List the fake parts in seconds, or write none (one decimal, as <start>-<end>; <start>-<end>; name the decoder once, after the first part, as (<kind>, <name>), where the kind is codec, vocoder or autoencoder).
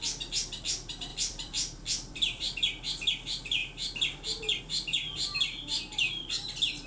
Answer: 1.1-2.4 (vocoder, BigVGAN v2)